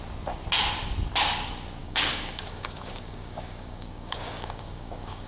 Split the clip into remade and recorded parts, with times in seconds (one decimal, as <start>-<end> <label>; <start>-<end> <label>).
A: 0.0-1.8 recorded; 1.8-5.3 remade